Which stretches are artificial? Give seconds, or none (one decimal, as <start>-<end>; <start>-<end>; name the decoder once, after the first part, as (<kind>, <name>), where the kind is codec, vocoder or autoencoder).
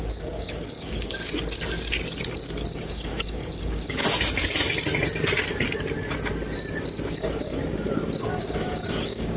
0.0-1.2 (codec, DAC); 2.7-4.0; 7.1-7.6; 8.2-9.4